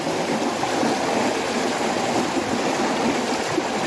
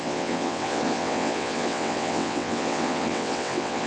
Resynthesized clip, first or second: second